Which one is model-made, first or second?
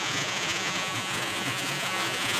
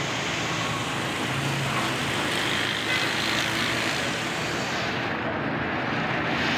first